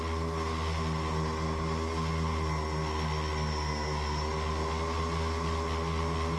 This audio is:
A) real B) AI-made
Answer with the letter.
A